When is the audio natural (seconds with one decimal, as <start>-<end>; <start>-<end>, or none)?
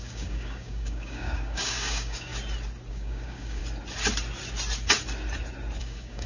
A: 2.3-2.9; 3.6-5.8